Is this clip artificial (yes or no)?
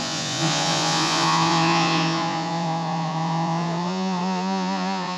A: yes